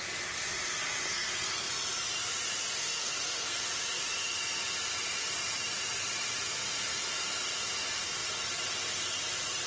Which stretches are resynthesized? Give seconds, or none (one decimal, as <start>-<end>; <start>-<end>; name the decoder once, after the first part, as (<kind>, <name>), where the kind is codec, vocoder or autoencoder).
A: 1.1-1.7 (codec, SNAC); 2.8-3.6